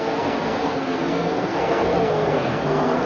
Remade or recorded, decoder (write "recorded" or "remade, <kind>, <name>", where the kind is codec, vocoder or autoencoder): remade, codec, SNAC